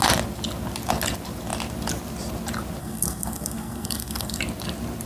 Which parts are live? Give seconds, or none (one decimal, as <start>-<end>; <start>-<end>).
0.0-2.8; 4.4-5.1